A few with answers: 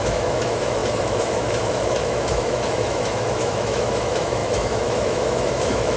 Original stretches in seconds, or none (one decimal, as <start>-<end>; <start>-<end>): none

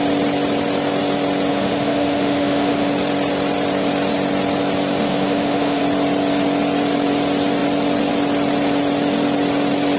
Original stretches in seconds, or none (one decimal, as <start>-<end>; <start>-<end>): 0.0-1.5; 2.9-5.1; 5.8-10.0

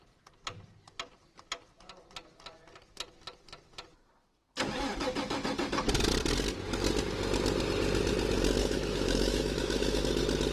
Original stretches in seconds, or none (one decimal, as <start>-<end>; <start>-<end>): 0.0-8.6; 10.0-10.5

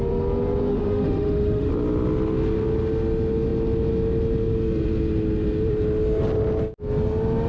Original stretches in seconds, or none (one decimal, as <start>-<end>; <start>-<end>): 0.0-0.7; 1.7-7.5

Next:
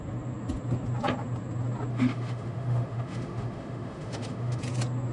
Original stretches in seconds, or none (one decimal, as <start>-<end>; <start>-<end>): 0.0-1.9; 4.6-5.1

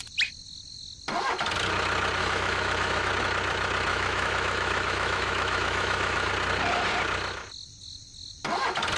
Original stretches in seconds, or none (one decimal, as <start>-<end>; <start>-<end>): 0.0-2.2; 3.1-3.9; 6.3-9.0

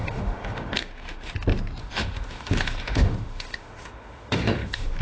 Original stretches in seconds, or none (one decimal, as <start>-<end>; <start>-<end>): 1.3-1.8